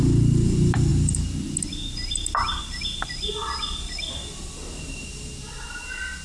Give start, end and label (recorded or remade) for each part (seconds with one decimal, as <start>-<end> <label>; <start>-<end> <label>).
0.0-6.2 recorded